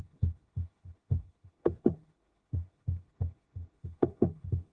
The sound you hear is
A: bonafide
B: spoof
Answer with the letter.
B